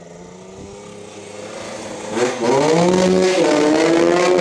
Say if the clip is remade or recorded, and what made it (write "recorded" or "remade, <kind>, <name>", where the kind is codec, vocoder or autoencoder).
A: recorded